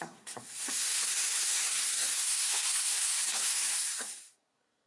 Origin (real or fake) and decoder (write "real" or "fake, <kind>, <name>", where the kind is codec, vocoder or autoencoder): fake, codec, SNAC